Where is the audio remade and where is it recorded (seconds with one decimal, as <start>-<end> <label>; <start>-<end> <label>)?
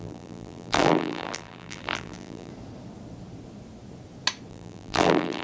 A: 0.0-2.5 remade; 2.5-4.5 recorded; 4.5-5.4 remade